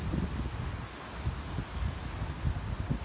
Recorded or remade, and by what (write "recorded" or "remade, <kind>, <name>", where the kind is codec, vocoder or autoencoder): recorded